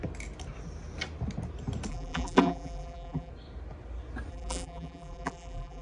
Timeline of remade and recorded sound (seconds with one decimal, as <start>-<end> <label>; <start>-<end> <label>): 0.0-1.9 recorded; 1.9-3.3 remade; 3.3-4.3 recorded; 4.3-5.8 remade